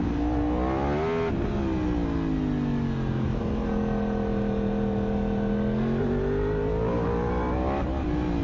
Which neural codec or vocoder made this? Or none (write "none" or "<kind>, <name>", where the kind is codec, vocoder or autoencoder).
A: none